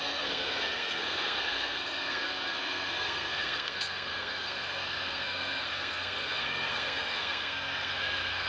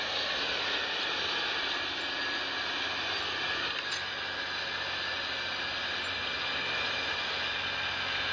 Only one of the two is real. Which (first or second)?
second